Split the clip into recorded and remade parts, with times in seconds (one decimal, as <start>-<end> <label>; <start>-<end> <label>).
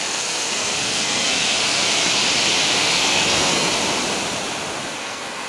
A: 0.0-2.2 remade; 2.2-2.8 recorded; 2.8-3.7 remade; 3.7-5.0 recorded; 5.0-5.5 remade